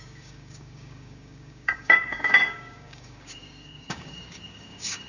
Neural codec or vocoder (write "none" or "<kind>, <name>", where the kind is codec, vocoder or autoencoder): codec, DAC